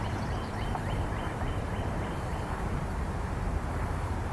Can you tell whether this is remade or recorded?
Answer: remade